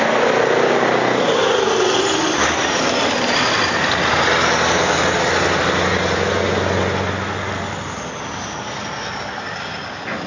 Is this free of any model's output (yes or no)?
yes